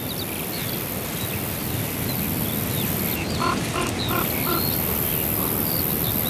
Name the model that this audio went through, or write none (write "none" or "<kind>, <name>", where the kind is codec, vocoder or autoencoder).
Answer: none